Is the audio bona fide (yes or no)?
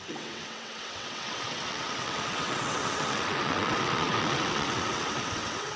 no